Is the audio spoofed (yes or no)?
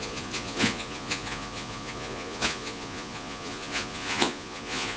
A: yes